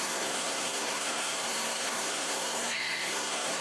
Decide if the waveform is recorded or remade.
remade